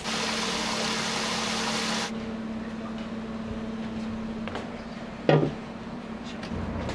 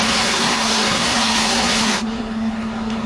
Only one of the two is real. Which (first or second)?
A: first